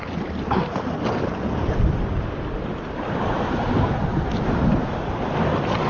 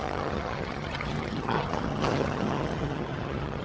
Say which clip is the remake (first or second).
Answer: second